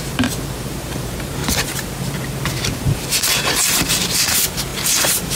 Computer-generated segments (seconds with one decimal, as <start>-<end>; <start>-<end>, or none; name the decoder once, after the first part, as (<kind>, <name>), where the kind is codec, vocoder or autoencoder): 0.0-5.4 (vocoder, BigVGAN v2)